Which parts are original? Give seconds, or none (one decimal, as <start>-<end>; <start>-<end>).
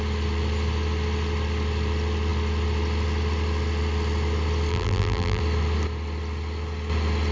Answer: 0.0-4.7; 5.4-7.3